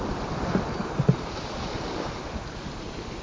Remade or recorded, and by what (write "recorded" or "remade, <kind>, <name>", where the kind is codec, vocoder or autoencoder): recorded